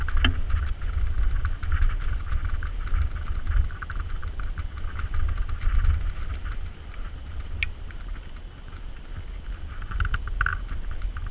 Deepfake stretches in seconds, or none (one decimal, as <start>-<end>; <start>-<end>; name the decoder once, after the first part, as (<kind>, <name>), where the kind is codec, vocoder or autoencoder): none